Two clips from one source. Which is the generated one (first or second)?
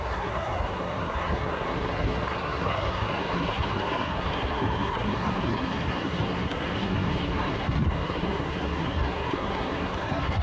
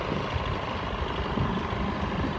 first